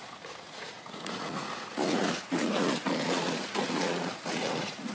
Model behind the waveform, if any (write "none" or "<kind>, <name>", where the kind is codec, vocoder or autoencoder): vocoder, Vocos